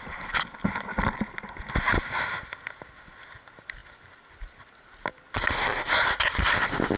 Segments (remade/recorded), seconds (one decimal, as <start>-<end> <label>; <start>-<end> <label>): 0.0-7.0 recorded